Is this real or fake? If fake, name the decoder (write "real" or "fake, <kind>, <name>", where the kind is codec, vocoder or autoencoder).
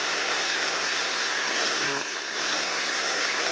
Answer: fake, codec, SNAC